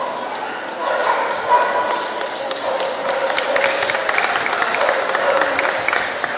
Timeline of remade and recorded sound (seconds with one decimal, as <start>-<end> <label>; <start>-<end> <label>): 0.0-6.4 recorded